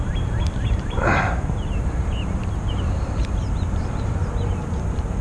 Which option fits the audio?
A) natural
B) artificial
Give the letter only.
B